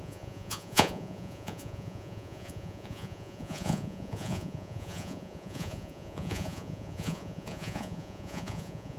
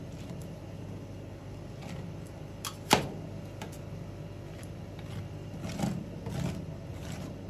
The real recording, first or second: second